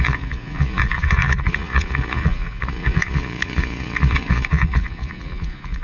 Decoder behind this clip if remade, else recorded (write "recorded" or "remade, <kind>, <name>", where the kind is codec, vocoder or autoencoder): remade, vocoder, Vocos